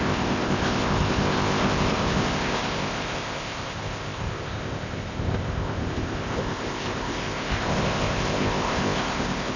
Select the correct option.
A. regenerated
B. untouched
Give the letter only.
A